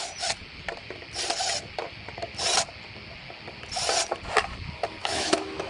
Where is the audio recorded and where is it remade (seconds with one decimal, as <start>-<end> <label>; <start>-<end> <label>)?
0.0-5.0 recorded; 5.0-5.7 remade